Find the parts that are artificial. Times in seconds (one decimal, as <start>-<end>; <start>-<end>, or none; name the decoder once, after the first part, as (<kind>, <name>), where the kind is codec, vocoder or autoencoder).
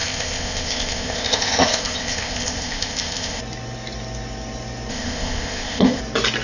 0.0-3.4 (codec, ZipCodec); 4.9-6.0